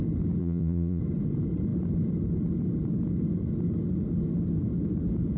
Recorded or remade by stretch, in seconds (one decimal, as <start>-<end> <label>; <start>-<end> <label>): 0.0-0.4 recorded; 0.4-1.0 remade; 1.0-5.4 recorded